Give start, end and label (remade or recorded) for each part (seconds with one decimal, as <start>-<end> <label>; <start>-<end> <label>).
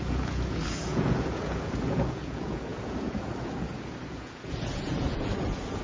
0.0-5.8 remade